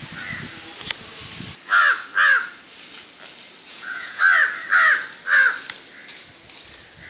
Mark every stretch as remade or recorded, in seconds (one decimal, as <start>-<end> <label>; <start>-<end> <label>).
0.0-3.7 recorded; 3.7-4.2 remade; 4.2-7.1 recorded